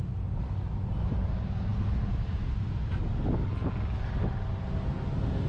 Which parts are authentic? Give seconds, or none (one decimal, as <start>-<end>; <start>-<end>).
0.0-5.5